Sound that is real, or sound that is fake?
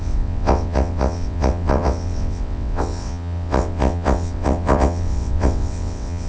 fake